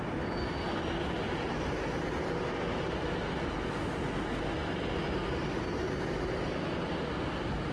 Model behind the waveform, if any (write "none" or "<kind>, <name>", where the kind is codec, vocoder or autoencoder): none